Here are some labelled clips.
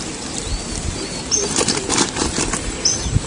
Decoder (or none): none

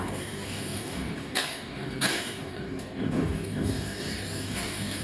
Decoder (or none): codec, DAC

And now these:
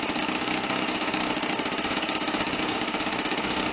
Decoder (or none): codec, DAC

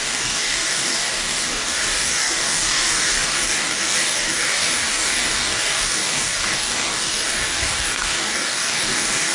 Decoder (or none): codec, DAC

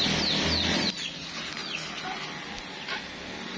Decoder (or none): none